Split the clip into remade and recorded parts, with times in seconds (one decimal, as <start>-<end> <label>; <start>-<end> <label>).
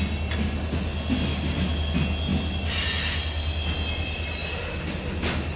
0.0-5.6 recorded